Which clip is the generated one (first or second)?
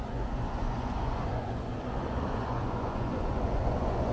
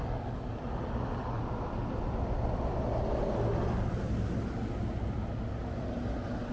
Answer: first